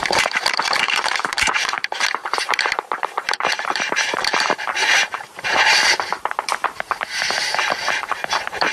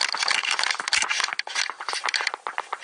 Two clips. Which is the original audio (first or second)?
second